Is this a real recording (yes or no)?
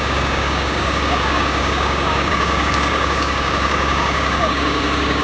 no